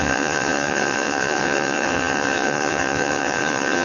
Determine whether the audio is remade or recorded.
remade